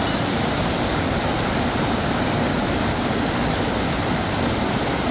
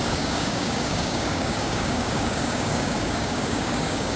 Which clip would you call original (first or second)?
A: first